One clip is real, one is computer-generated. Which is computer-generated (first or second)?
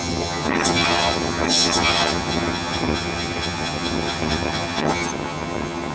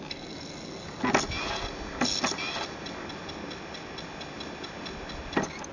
first